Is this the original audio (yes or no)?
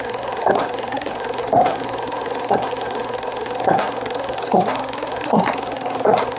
no